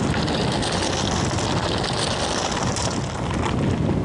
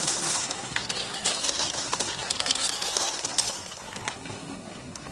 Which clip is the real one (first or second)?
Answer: first